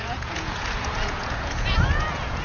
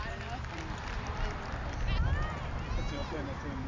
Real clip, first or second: second